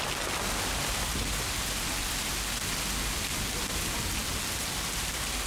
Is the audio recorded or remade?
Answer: recorded